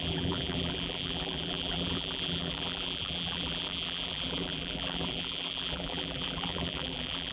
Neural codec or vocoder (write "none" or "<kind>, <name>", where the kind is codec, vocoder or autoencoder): vocoder, BigVGAN v2